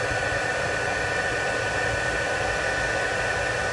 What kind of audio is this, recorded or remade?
recorded